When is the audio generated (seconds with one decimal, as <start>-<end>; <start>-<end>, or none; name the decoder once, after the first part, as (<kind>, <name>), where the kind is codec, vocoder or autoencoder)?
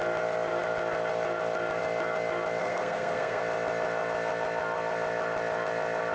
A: 2.6-3.4 (codec, SNAC)